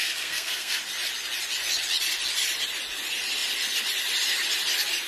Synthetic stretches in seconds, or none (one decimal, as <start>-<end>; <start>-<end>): 0.0-0.8